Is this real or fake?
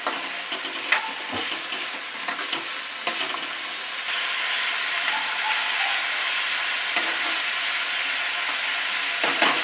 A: real